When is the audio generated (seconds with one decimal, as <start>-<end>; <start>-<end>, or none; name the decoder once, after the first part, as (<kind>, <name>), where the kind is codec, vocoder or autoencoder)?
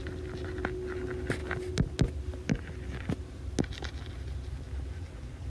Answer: none